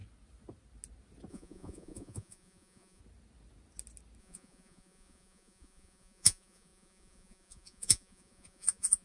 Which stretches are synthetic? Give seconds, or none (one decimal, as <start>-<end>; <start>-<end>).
1.3-3.0; 4.2-9.0